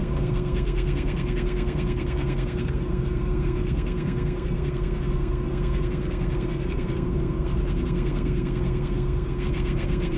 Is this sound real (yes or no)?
no